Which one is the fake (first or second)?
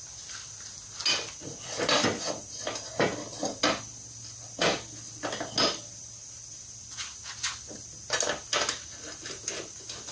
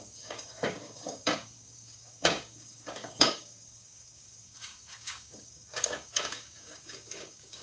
second